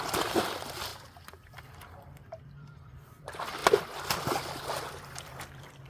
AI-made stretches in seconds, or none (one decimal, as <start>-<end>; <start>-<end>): 0.0-3.6; 4.9-5.9

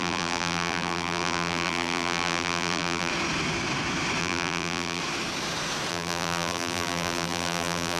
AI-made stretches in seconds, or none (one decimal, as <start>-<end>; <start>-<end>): 0.0-3.1; 4.2-5.0; 5.9-8.0